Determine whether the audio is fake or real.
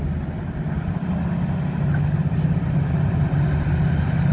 real